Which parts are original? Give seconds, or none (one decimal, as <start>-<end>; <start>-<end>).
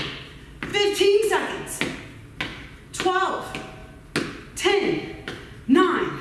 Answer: 0.0-6.2